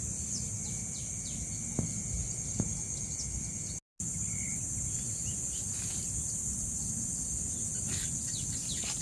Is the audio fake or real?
real